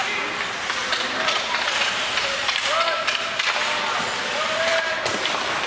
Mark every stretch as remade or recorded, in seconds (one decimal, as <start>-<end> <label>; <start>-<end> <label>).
0.0-0.8 recorded; 0.8-2.7 remade; 2.7-5.7 recorded